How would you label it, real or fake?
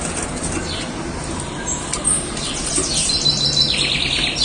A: real